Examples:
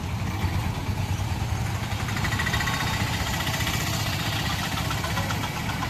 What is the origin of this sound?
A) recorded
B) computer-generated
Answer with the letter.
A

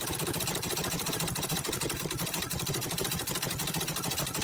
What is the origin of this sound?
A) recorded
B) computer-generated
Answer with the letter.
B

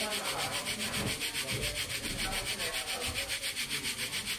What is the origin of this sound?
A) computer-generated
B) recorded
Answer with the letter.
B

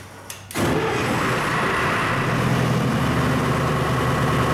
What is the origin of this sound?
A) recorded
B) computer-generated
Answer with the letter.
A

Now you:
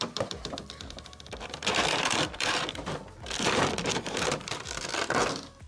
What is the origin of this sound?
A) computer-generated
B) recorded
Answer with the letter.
A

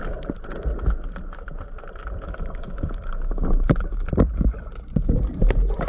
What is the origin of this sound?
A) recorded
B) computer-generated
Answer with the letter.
B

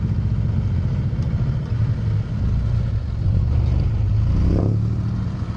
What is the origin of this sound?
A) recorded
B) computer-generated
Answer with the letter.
A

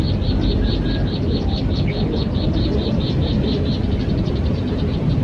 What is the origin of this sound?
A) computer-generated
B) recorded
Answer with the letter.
B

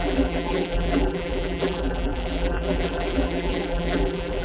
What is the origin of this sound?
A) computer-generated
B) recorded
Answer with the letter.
A